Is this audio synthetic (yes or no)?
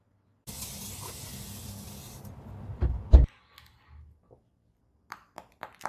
no